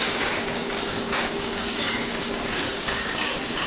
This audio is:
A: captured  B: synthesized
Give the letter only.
B